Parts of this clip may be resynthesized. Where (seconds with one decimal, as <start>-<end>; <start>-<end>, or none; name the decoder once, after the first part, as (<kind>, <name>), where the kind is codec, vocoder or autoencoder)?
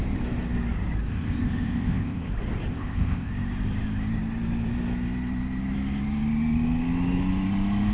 1.1-2.3 (codec, ZipCodec); 2.7-3.3